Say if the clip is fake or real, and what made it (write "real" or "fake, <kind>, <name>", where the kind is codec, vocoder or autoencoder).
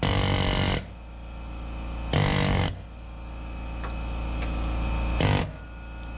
real